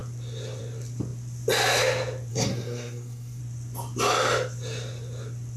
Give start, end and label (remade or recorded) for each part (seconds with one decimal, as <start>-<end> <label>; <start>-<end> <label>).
0.0-2.3 recorded; 2.3-3.4 remade; 3.4-5.6 recorded